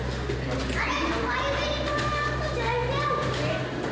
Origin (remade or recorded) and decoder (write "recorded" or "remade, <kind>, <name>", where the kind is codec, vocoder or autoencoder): recorded